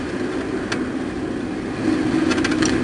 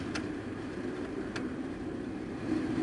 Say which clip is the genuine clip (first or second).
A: first